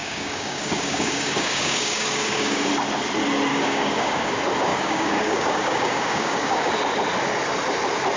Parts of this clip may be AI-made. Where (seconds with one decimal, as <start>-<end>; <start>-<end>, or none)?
0.0-2.7; 3.5-4.3; 4.7-6.7